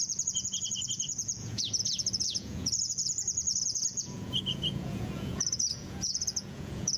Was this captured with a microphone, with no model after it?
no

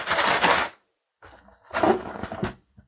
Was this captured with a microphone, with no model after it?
yes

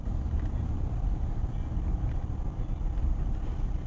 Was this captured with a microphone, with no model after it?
yes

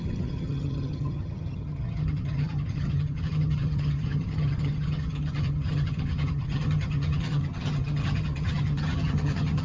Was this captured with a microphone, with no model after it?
no